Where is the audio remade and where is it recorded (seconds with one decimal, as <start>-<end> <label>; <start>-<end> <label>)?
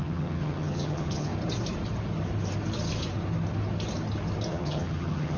0.0-1.3 remade; 1.3-4.5 recorded; 4.5-5.4 remade